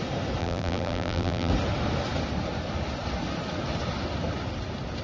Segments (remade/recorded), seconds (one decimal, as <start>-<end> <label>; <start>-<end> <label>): 0.0-0.4 recorded; 0.4-1.5 remade; 1.5-5.0 recorded